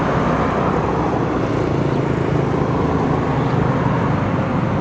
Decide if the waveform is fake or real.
real